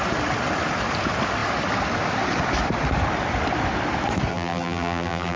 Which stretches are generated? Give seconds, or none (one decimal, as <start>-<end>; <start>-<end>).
4.3-5.4